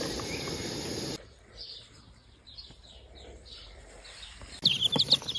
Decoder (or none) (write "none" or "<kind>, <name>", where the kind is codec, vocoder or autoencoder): none